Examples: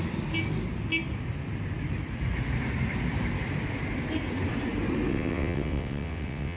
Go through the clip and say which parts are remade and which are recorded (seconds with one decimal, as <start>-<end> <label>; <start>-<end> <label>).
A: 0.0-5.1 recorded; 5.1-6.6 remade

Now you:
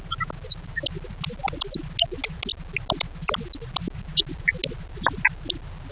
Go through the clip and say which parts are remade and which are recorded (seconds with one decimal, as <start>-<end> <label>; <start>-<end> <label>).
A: 0.0-5.9 recorded

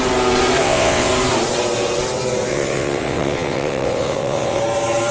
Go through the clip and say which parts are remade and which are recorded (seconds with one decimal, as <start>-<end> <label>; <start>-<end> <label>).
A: 0.0-0.6 recorded; 0.6-1.1 remade; 1.1-2.5 recorded; 2.5-4.6 remade; 4.6-5.1 recorded

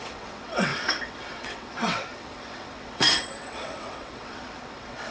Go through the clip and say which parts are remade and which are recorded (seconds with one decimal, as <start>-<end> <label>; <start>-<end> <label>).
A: 0.0-5.1 remade